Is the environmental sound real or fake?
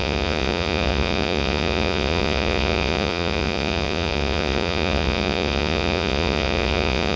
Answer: fake